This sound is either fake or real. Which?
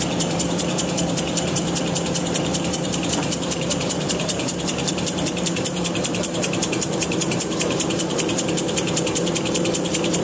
fake